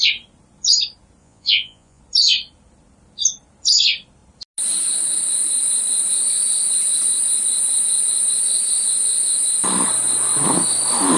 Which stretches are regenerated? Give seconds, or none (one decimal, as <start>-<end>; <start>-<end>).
1.2-2.0